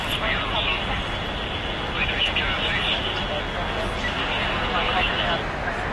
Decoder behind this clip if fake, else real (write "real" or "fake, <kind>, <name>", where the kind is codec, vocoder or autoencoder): real